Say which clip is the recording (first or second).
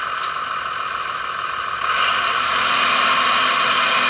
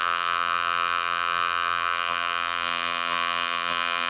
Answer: first